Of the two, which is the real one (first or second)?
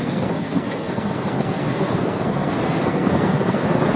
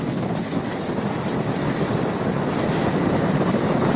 second